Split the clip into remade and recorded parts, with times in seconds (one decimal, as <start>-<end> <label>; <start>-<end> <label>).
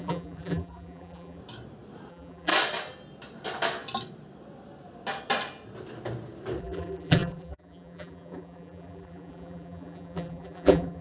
0.0-1.4 remade; 1.4-2.1 recorded; 2.1-2.5 remade; 2.5-6.6 recorded; 6.6-11.0 remade